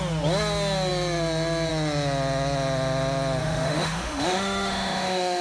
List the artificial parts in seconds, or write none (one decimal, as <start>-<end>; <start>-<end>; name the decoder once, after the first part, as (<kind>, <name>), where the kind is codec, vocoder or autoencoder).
3.4-5.4 (autoencoder, DAC-VAE)